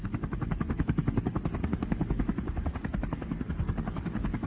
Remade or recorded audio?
remade